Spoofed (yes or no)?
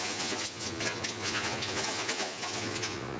yes